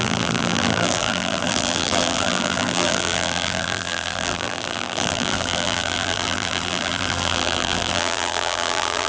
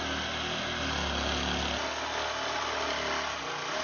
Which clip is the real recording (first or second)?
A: second